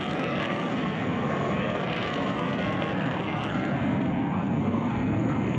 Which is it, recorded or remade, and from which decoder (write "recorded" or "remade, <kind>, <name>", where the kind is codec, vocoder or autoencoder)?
remade, codec, SNAC